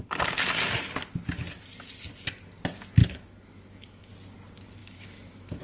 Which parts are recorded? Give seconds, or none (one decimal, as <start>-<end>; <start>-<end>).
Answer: 0.0-3.0; 4.1-4.8